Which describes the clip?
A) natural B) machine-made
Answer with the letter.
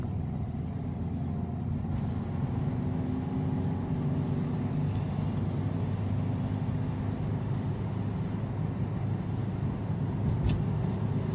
A